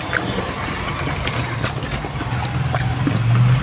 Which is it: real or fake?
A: real